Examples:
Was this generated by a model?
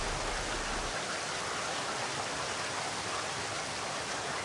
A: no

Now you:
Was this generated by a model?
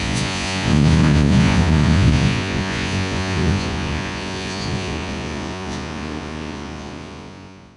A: yes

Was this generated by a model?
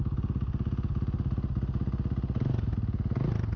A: no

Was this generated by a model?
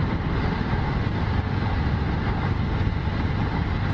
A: no